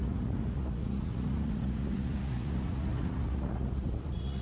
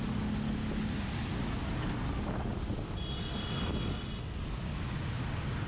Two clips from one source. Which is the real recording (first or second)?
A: second